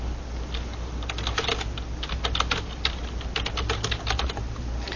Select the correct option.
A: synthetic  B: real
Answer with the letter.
B